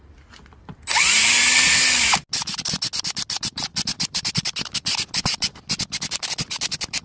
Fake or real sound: real